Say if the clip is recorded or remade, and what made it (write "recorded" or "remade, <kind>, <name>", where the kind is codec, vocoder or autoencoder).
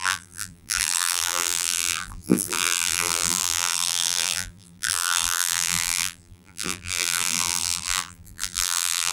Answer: remade, vocoder, BigVGAN v2